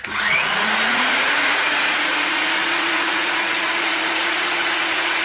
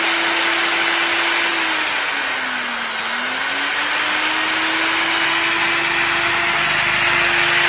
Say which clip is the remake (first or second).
first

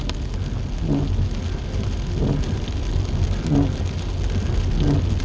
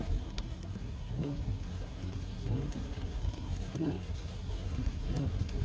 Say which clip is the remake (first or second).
second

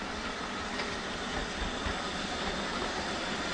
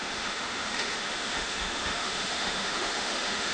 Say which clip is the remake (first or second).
second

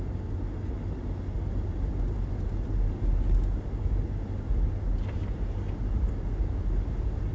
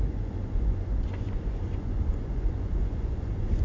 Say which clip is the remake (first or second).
second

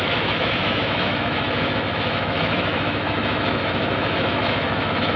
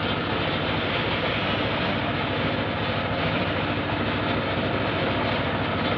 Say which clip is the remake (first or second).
first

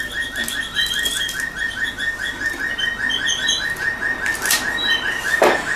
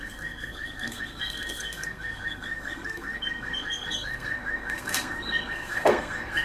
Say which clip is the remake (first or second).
second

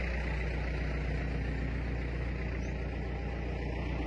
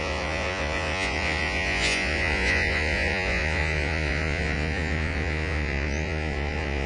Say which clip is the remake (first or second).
second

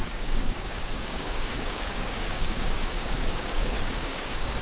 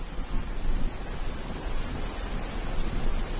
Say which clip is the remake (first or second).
first